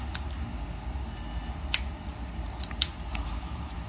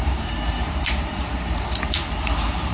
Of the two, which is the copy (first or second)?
second